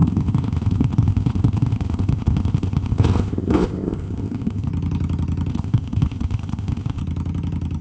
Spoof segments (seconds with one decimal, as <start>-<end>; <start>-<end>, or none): 0.0-4.7; 5.5-7.0